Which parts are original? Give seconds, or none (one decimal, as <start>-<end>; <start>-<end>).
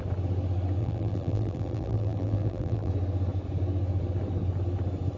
0.0-0.8; 2.9-5.2